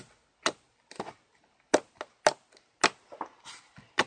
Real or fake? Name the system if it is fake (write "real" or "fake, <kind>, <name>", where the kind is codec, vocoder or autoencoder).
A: real